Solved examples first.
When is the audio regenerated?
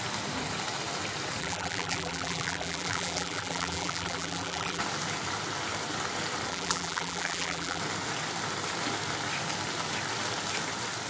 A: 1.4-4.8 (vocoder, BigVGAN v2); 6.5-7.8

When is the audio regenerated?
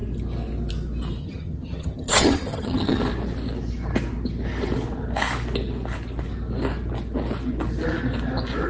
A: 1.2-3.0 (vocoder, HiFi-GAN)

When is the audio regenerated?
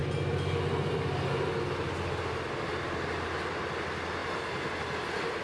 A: none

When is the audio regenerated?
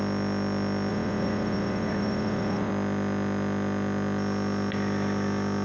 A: 0.9-2.7 (vocoder, Vocos)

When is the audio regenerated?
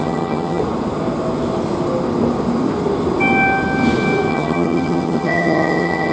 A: 0.0-0.6 (vocoder, HiFi-GAN); 4.3-6.1